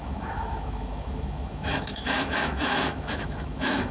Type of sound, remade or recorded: remade